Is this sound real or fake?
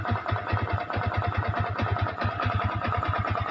real